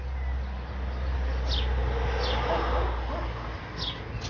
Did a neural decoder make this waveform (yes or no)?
no